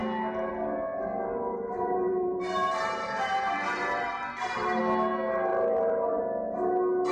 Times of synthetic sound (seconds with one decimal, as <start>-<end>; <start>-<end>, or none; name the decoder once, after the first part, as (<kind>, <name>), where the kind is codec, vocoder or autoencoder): 1.5-4.8 (vocoder, BigVGAN v2); 5.5-6.2